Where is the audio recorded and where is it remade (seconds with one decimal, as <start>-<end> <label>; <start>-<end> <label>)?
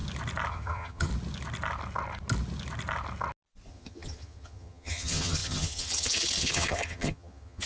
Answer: 0.0-0.5 recorded; 0.5-1.1 remade; 1.1-3.7 recorded; 3.7-7.7 remade